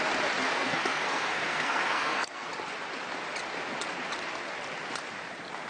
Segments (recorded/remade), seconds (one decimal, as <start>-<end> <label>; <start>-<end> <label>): 0.0-0.4 recorded; 0.4-2.5 remade; 2.5-5.7 recorded